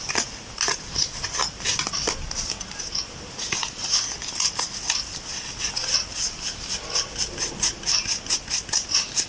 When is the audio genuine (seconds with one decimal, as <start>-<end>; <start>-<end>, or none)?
0.0-9.3